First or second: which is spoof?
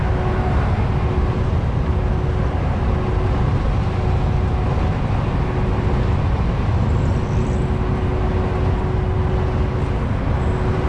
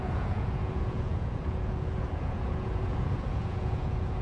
second